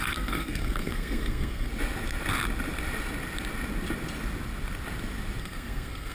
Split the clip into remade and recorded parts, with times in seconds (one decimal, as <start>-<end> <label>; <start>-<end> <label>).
0.0-1.7 remade; 1.7-5.4 recorded; 5.4-6.1 remade